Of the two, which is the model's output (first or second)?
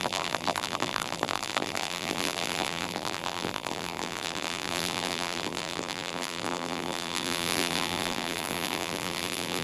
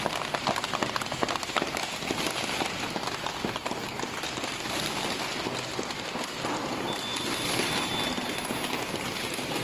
first